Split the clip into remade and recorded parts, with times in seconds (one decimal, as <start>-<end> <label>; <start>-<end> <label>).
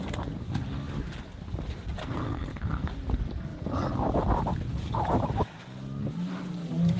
0.0-2.0 recorded; 2.0-2.9 remade; 2.9-7.0 recorded